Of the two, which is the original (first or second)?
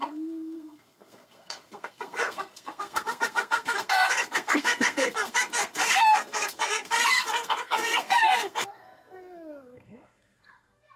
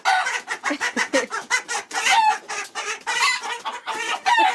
second